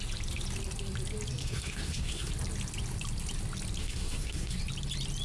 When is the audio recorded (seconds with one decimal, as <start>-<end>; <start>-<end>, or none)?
0.0-1.4; 2.3-3.8; 4.6-5.2